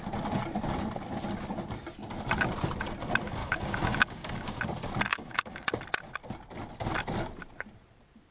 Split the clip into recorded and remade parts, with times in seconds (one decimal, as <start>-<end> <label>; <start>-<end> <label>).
0.0-3.4 recorded; 3.4-4.6 remade; 4.6-5.1 recorded; 5.1-5.7 remade; 5.7-8.3 recorded